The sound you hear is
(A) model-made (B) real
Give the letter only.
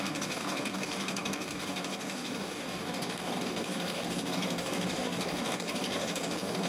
A